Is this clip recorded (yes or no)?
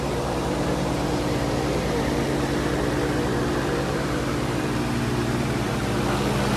no